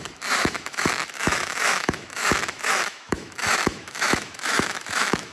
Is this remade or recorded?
remade